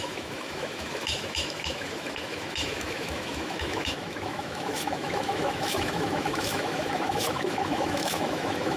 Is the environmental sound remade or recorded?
remade